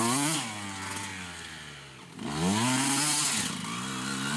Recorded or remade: recorded